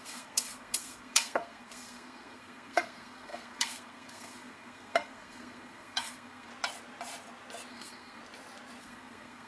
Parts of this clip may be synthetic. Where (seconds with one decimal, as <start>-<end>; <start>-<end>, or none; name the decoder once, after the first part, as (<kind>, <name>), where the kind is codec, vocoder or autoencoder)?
0.0-6.5 (codec, SNAC); 7.7-8.2; 8.8-9.5